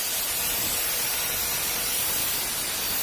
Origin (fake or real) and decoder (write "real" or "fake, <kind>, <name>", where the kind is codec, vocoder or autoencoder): real